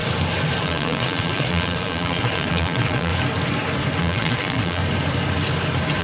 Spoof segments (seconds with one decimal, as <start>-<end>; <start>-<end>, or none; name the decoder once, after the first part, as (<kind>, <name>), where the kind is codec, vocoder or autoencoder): 0.6-3.1 (vocoder, Vocos); 4.0-4.8